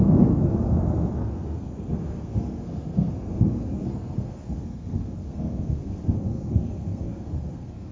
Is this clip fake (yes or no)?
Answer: yes